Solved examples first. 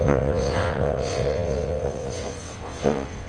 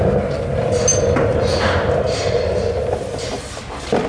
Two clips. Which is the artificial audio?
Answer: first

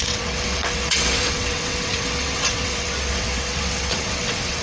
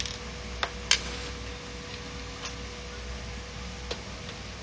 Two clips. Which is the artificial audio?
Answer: first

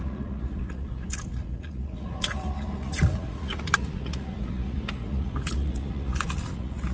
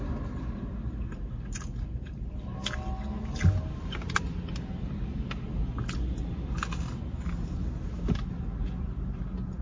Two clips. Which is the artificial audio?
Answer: first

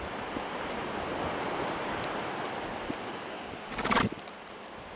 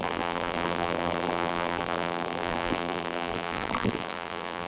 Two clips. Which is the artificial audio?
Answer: second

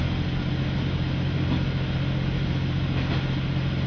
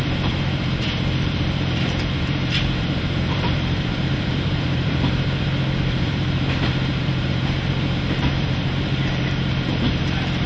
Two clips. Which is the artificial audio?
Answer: second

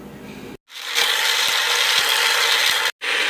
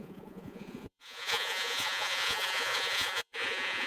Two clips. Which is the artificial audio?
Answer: second